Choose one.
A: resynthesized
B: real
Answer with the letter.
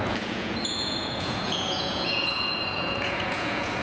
A